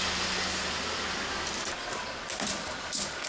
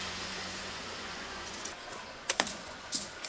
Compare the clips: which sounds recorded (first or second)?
first